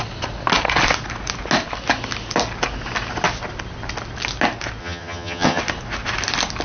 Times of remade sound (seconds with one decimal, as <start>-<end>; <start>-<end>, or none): 4.8-5.6